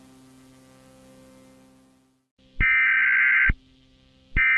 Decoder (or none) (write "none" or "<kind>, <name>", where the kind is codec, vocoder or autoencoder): none